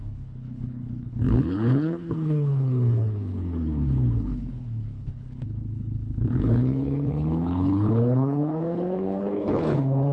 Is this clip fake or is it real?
fake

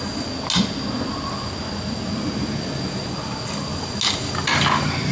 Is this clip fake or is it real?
real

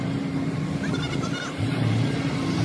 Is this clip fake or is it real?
real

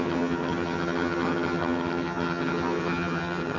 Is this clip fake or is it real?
fake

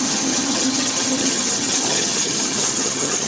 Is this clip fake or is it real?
fake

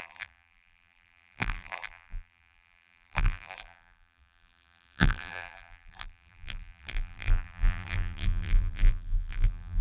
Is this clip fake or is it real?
fake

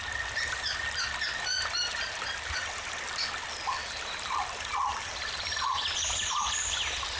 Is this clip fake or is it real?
real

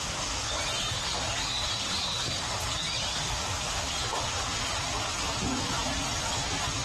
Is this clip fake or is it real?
real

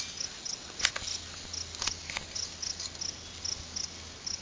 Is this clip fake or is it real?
real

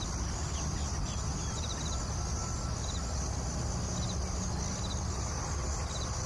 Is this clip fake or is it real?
real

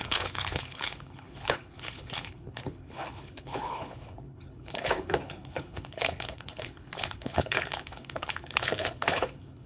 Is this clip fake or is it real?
fake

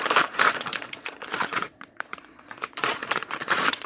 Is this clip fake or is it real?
fake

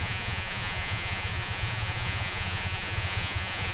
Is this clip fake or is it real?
fake